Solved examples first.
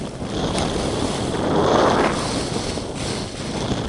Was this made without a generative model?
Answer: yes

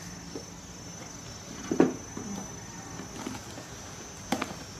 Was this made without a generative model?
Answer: yes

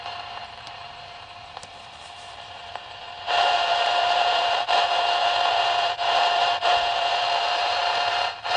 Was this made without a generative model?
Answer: no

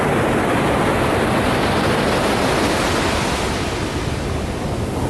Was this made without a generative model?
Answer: yes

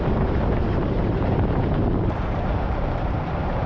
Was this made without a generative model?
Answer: no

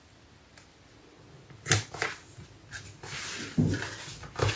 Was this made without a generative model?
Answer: yes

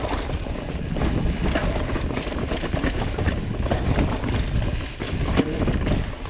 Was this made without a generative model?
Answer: no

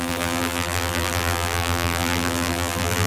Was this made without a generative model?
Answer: no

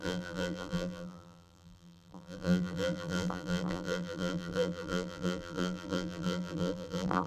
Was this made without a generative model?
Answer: no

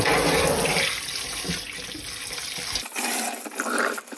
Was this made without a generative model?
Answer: yes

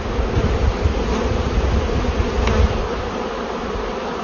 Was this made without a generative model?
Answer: yes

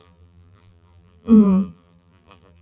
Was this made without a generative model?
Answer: no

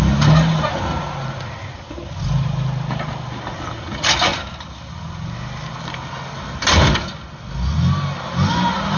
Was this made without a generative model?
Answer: yes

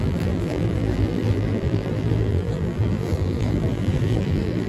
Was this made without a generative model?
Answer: no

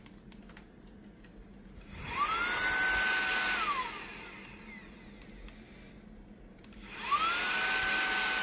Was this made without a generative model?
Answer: yes